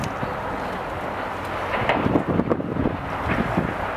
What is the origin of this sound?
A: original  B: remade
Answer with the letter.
A